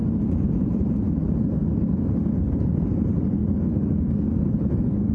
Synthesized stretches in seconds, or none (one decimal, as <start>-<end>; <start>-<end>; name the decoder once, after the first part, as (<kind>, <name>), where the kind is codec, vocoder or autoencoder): 0.0-1.6 (vocoder, BigVGAN v2); 2.4-3.4; 4.4-5.1